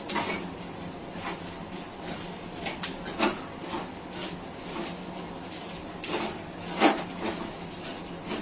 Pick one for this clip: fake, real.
real